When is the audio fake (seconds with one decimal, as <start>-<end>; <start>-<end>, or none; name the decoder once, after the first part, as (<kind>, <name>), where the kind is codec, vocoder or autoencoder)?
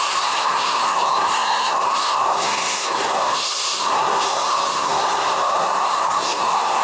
0.0-6.8 (codec, SNAC)